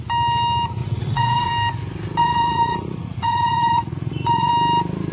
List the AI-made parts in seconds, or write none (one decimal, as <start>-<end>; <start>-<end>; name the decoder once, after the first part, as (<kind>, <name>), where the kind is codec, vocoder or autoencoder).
0.8-1.5 (vocoder, Vocos); 2.2-4.5